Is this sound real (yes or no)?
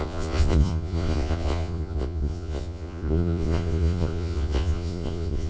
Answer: no